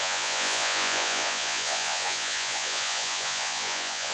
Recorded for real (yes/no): no